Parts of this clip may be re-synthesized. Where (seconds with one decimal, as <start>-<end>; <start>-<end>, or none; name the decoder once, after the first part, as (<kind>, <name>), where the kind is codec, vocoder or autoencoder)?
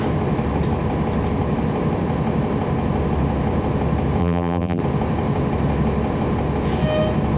4.2-4.8 (vocoder, BigVGAN v2)